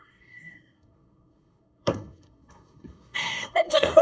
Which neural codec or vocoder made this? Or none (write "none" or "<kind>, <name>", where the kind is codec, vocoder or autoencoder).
codec, SNAC